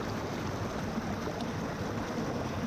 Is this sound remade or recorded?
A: recorded